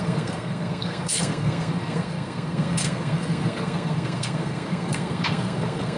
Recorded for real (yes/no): no